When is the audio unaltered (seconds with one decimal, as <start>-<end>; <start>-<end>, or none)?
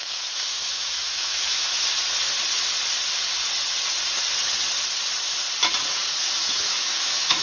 1.8-6.2